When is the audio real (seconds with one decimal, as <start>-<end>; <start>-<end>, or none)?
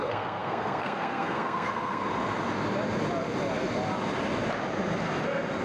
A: 2.0-5.6